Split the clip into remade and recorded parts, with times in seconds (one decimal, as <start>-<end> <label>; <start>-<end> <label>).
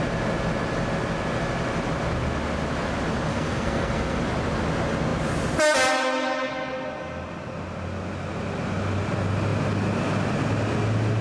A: 0.0-3.3 recorded; 3.3-4.2 remade; 4.2-11.2 recorded